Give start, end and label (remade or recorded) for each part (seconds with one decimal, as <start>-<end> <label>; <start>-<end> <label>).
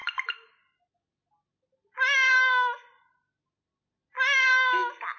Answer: 0.0-5.2 recorded